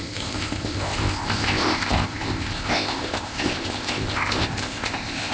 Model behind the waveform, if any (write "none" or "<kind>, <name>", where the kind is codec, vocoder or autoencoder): codec, ZipCodec